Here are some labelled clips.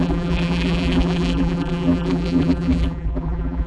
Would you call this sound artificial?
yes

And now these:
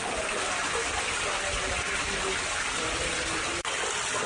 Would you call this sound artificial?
no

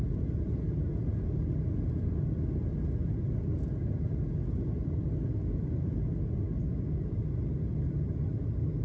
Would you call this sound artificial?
no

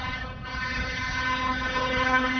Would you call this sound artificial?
yes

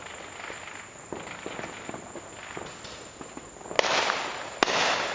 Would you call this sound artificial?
no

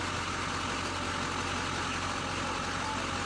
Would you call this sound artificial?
no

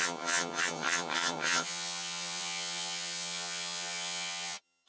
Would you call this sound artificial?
yes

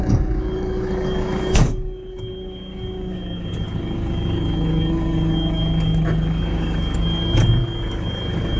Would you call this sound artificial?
yes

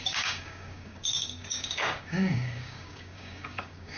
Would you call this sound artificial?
yes